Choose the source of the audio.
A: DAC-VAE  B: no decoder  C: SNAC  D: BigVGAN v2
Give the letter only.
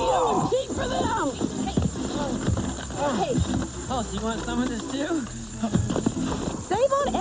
B